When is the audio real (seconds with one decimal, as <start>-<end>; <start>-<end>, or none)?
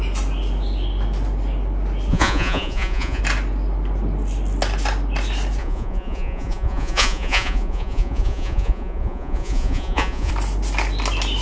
0.0-2.1; 3.2-5.6; 10.3-11.4